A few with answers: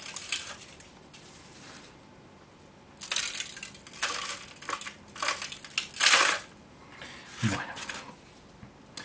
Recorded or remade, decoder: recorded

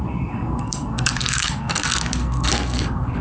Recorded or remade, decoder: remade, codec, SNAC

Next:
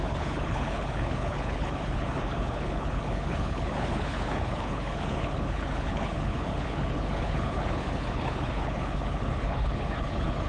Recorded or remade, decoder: remade, codec, HILCodec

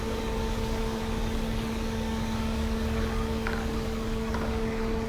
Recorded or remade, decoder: remade, codec, DAC